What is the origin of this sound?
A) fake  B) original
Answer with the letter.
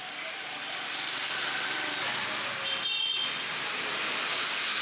B